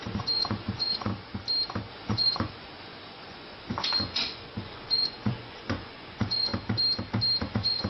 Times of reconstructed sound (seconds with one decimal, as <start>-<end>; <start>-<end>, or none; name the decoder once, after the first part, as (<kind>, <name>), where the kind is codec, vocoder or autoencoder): 0.0-1.1 (vocoder, Vocos); 1.9-6.5; 7.4-7.9